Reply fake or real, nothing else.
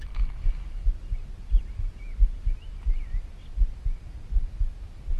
real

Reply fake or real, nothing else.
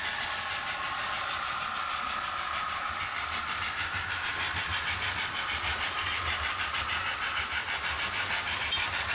real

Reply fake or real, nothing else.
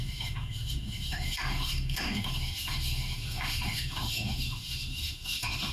fake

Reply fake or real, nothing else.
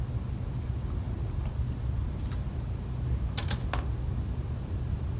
real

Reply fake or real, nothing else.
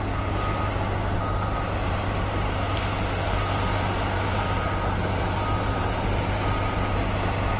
real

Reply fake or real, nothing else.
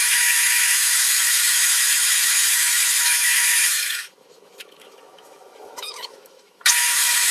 fake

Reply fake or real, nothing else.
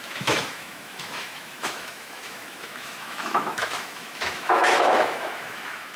fake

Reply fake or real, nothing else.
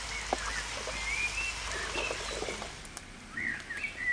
real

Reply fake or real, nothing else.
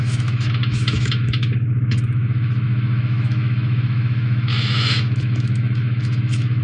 fake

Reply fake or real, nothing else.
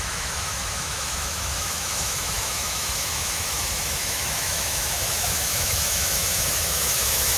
fake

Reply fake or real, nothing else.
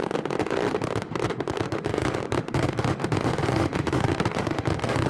fake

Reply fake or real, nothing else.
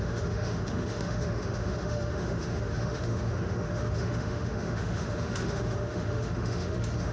fake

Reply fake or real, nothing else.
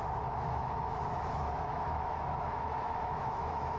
fake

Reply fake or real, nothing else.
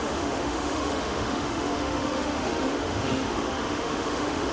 fake